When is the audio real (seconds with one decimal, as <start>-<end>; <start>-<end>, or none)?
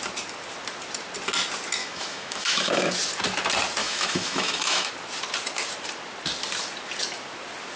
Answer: 0.0-1.8; 2.9-3.8; 4.9-7.8